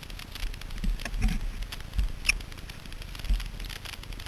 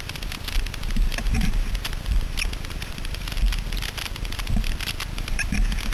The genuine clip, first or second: first